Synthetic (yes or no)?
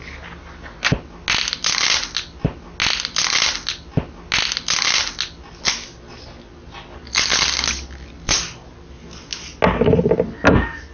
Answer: no